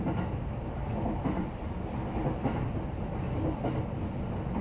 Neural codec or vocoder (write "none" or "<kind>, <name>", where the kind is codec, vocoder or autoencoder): none